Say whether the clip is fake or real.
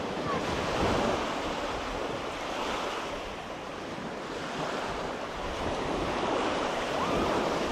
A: fake